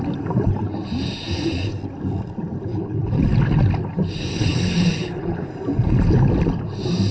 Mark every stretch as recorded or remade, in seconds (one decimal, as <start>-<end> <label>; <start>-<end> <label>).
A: 0.0-2.7 recorded; 2.7-3.2 remade; 3.2-4.3 recorded; 4.3-5.5 remade; 5.5-7.1 recorded